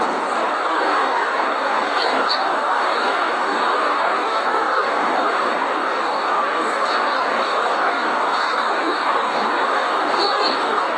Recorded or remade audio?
remade